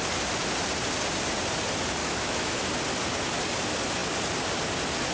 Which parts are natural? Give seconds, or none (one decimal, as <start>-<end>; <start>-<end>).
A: 0.0-2.0; 2.5-5.1

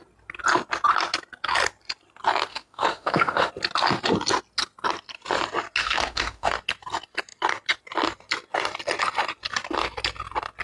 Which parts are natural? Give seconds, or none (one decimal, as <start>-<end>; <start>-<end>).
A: 0.0-2.5; 3.5-5.8; 6.5-10.6